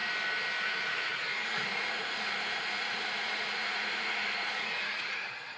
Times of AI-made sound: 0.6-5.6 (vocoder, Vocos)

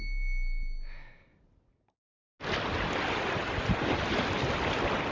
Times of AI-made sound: none

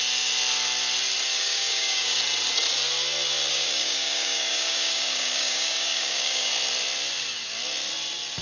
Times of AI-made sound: 1.3-2.2 (codec, DAC); 3.5-6.5

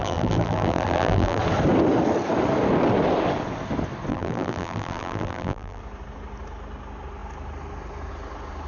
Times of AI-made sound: 0.0-1.4 (vocoder, BigVGAN v2); 4.1-5.8